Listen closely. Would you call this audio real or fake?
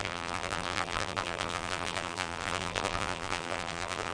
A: fake